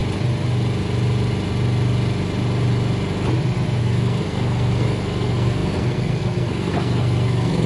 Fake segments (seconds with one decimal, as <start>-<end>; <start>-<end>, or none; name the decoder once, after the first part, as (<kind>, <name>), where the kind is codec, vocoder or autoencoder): 3.8-7.7 (codec, SNAC)